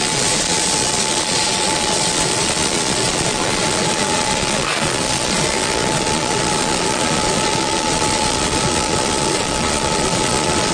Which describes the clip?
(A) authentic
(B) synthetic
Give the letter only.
B